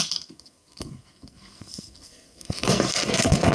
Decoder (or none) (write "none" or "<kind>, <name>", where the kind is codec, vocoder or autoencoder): codec, SNAC